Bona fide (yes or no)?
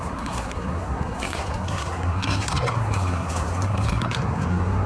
no